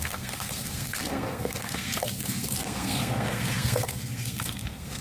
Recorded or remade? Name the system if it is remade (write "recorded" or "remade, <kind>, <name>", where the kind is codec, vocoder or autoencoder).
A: remade, codec, SNAC